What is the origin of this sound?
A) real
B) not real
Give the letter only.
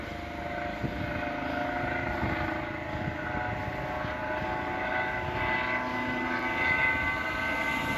A